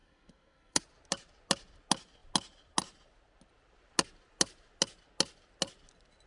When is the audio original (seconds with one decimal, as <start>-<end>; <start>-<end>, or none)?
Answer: 0.8-6.3